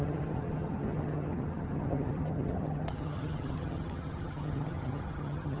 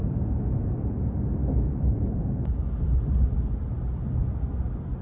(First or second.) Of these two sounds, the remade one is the first